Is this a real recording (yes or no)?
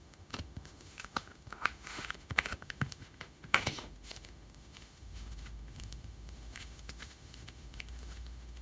no